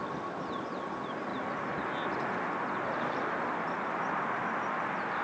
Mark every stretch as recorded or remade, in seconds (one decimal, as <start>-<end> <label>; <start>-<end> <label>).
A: 0.0-5.2 recorded